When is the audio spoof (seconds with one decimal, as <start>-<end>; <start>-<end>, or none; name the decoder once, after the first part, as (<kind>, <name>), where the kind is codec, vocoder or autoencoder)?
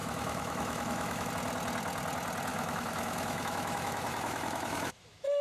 0.0-1.3 (autoencoder, DAC-VAE); 2.5-5.4